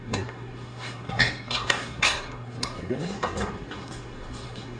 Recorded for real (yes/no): no